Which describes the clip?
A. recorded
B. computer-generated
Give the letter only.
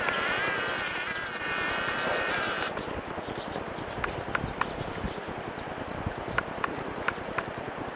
A